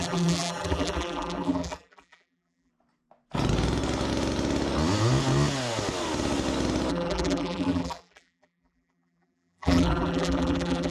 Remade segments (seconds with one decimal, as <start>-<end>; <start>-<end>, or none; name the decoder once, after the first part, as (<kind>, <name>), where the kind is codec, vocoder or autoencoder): 0.0-2.7 (vocoder, BigVGAN v2); 6.9-10.9